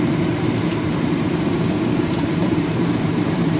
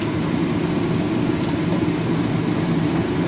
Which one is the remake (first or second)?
first